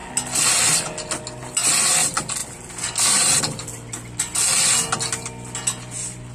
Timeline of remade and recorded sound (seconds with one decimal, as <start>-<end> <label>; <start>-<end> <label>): 0.0-2.4 recorded; 2.4-3.4 remade; 3.4-6.3 recorded